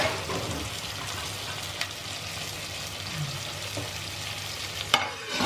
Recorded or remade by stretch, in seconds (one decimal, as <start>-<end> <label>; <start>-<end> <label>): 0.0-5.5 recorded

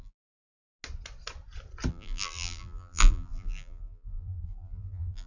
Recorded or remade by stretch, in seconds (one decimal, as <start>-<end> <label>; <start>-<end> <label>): 0.0-0.7 remade; 0.7-1.9 recorded; 1.9-5.3 remade

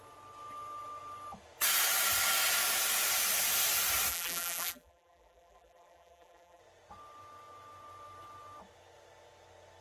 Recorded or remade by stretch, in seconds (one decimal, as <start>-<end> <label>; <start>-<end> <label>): 0.0-4.1 recorded; 4.1-6.6 remade; 6.6-9.8 recorded